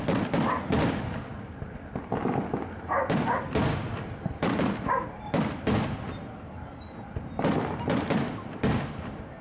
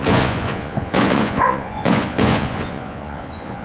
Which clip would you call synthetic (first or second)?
second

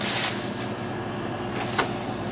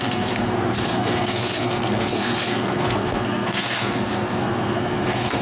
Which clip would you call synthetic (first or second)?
second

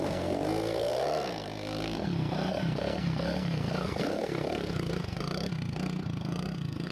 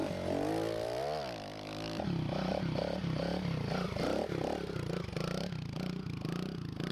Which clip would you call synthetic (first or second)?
first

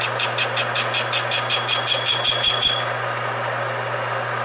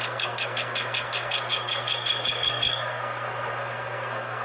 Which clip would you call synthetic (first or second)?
second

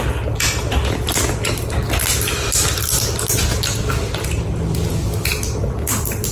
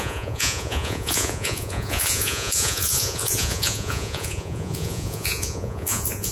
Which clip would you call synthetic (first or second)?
second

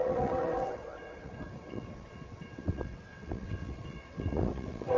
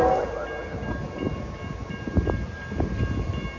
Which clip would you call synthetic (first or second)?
first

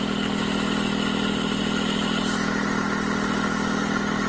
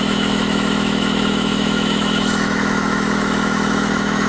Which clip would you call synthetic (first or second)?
second